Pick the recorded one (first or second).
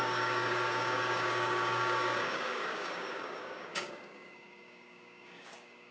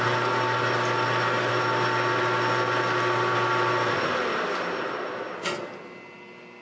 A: second